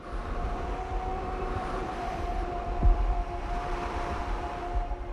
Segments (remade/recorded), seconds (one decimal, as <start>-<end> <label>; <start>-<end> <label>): 0.0-1.1 recorded; 1.1-4.2 remade; 4.2-5.1 recorded